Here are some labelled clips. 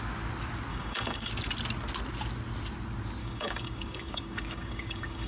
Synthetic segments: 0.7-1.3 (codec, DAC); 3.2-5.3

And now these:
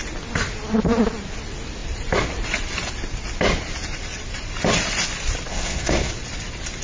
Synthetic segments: 5.5-6.1 (codec, SNAC)

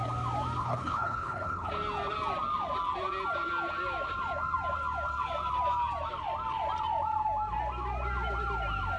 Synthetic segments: 0.6-1.7 (codec, HILCodec)

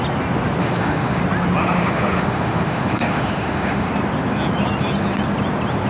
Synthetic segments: 0.6-1.2 (autoencoder, DAC-VAE); 1.6-3.9

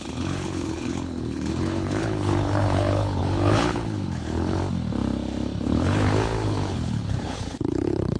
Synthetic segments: 0.0-4.6 (codec, HILCodec); 5.6-8.2

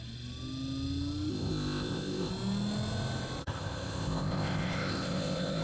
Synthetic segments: 1.3-2.3 (codec, ZipCodec); 3.4-5.6

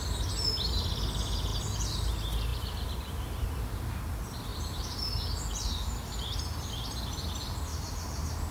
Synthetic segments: 2.5-3.2 (vocoder, BigVGAN v2); 4.5-5.1; 7.7-8.5

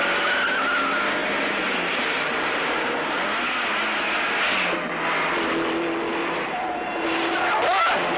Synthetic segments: 1.2-3.2 (vocoder, BigVGAN v2); 6.2-7.4